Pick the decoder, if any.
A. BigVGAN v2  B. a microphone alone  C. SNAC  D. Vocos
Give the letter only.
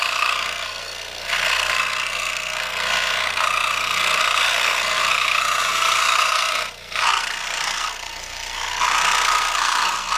C